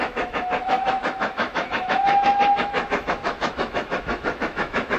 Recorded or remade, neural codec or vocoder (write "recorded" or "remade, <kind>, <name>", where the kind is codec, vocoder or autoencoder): remade, autoencoder, DAC-VAE